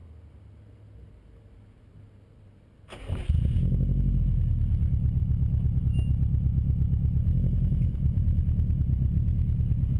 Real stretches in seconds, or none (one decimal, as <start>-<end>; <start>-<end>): 0.0-7.7; 8.4-10.0